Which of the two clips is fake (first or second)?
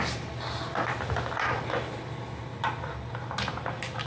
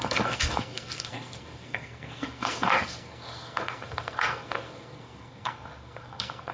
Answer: second